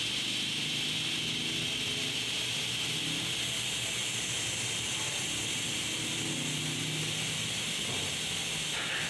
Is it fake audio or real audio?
real